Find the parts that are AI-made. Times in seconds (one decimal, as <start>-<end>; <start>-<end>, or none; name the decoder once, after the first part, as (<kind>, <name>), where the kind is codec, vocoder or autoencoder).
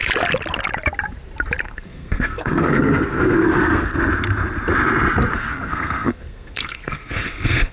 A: 1.6-3.9 (codec, SNAC); 5.3-7.7